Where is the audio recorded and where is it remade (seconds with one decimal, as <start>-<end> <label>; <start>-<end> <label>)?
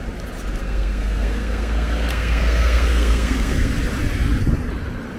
0.0-0.6 recorded; 0.6-3.7 remade; 3.7-5.2 recorded